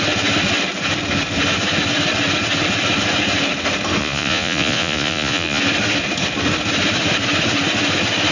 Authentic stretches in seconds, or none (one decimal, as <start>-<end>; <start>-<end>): 0.0-4.0; 5.6-8.3